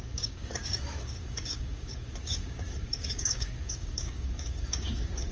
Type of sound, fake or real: fake